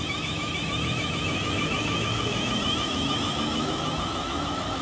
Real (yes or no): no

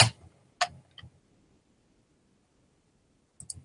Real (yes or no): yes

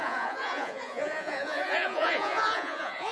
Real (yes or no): no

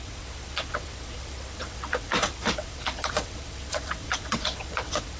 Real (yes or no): no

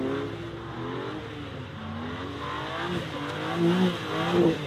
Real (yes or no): yes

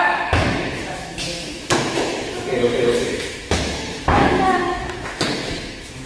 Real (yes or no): no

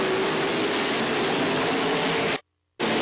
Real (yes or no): yes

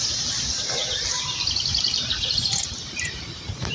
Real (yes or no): no